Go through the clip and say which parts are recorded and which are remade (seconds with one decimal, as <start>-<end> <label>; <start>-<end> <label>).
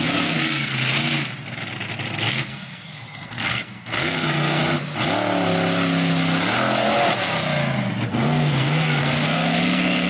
0.0-0.7 remade; 0.7-2.3 recorded; 2.3-4.6 remade; 4.6-8.1 recorded; 8.1-10.1 remade